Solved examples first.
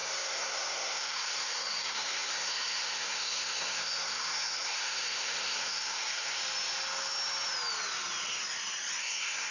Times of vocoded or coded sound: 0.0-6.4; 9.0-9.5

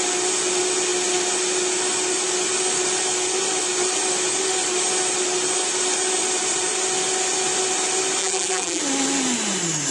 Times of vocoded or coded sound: 8.2-8.8

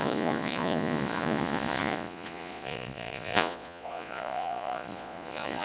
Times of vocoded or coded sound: 0.0-5.6

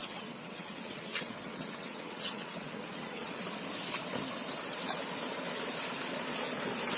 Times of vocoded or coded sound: 0.0-3.4

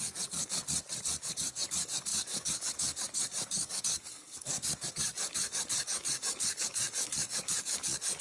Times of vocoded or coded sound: 0.0-0.6; 1.2-8.2

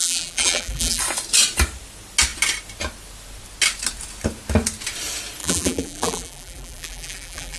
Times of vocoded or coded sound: 0.0-1.0; 5.4-7.6

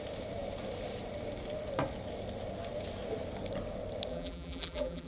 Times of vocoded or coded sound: 4.1-5.1

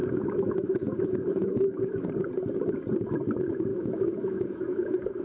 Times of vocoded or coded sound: 0.0-2.1; 3.7-5.2